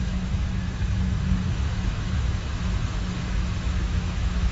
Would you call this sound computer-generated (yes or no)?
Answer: yes